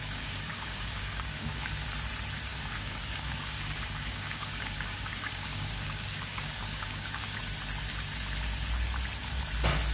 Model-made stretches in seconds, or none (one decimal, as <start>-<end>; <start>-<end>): 0.0-1.7; 2.5-7.4